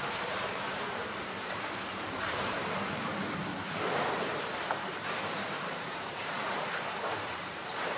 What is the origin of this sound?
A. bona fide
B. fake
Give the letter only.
B